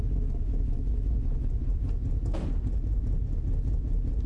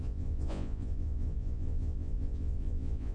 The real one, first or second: first